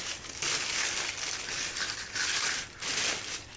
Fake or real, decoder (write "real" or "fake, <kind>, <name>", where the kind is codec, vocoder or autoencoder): real